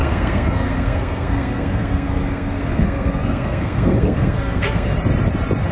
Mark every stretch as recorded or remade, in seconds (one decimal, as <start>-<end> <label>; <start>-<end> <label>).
0.0-4.9 remade; 4.9-5.7 recorded